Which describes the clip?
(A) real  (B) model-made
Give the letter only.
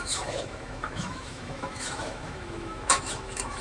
B